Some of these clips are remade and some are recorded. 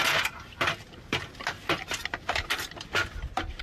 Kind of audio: recorded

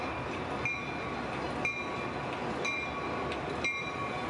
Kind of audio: recorded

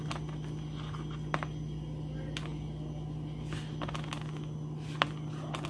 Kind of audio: recorded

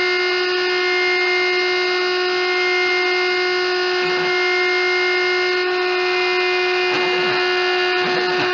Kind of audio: recorded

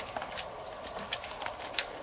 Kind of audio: remade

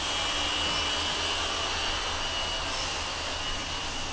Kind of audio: recorded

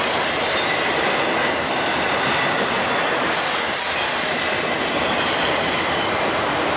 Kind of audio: recorded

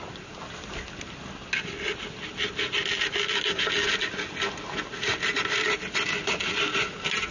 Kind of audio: recorded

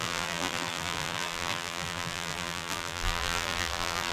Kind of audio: remade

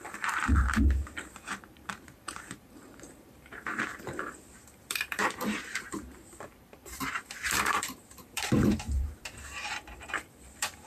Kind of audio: remade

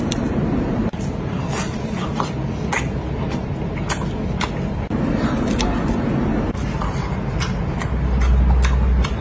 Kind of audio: recorded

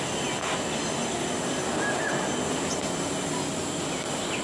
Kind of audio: recorded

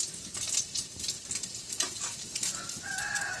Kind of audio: recorded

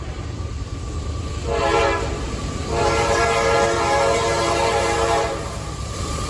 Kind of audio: remade